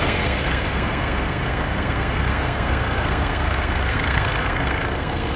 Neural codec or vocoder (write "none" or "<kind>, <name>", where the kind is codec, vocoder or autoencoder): codec, SNAC